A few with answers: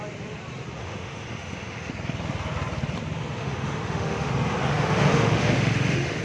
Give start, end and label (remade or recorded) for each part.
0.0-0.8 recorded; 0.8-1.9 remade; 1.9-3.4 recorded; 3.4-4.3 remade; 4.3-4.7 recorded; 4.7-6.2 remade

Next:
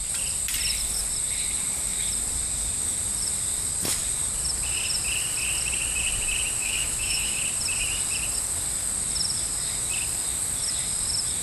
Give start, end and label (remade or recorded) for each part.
0.0-6.6 recorded; 6.6-7.4 remade; 7.4-11.4 recorded

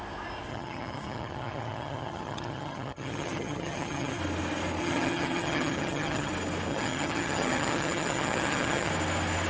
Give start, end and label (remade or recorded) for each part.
0.0-0.5 recorded; 0.5-4.2 remade; 4.2-4.8 recorded; 4.8-6.3 remade; 6.3-6.7 recorded; 6.7-8.9 remade; 8.9-9.5 recorded

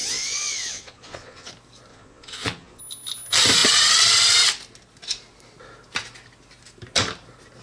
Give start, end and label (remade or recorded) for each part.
0.0-1.5 remade; 1.5-1.9 recorded; 1.9-2.8 remade; 2.8-7.6 recorded

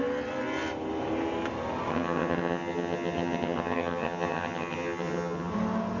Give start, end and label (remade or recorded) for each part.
0.0-1.9 recorded; 1.9-5.5 remade; 5.5-6.0 recorded